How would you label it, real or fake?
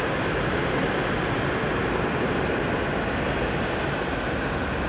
real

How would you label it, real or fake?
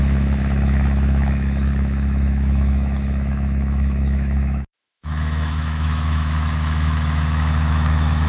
fake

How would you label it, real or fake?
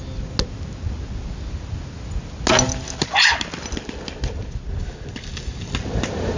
real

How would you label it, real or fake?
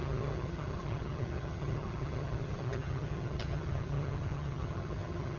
fake